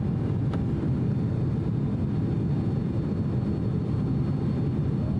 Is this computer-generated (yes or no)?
no